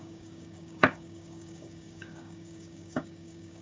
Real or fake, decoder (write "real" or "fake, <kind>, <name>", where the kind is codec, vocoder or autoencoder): fake, codec, DAC